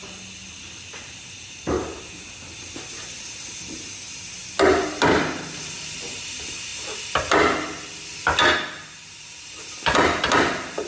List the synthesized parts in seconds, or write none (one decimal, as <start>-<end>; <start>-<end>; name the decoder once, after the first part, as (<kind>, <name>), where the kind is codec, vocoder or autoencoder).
none